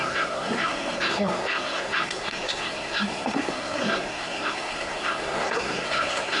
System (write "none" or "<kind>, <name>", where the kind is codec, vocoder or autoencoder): codec, SNAC